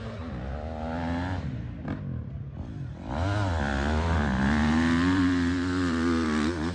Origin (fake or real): real